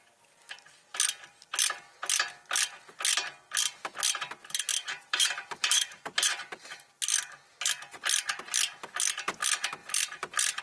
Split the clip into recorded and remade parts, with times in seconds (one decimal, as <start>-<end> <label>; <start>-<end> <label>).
0.0-4.7 recorded; 4.7-6.6 remade; 6.6-9.8 recorded; 9.8-10.6 remade